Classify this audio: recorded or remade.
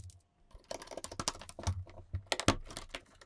recorded